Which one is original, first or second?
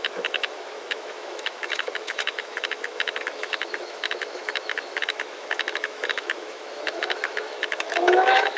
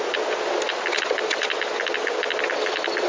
second